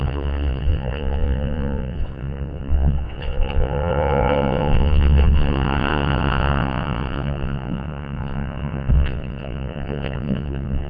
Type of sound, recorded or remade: remade